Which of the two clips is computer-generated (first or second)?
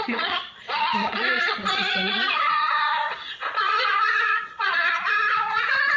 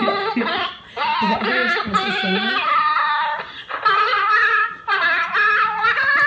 first